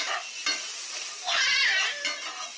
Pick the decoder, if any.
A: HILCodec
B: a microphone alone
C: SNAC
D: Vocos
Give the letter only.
B